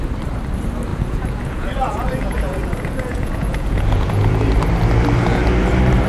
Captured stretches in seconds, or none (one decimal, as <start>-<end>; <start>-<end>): 0.0-0.9; 4.3-6.1